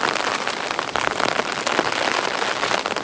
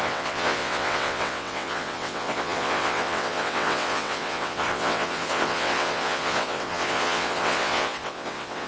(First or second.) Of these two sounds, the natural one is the first